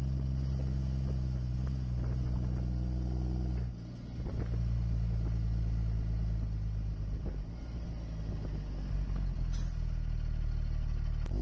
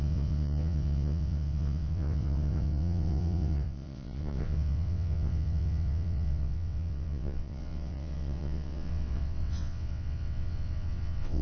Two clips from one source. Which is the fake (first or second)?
second